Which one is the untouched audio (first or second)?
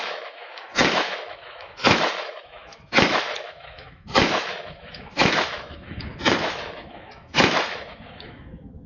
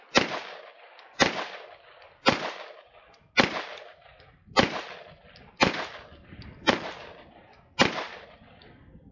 second